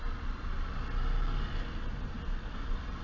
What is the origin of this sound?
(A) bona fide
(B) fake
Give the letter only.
A